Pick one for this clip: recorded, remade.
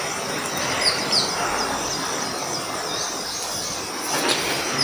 recorded